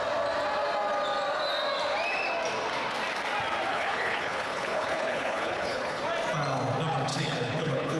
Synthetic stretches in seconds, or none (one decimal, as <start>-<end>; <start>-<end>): 3.7-6.0; 7.1-8.0